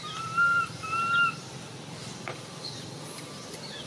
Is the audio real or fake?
real